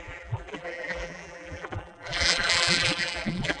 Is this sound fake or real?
fake